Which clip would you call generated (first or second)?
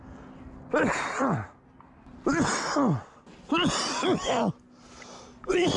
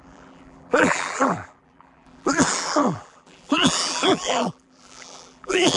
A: second